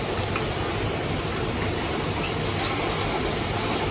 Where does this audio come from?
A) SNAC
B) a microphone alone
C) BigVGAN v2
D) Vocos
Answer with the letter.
B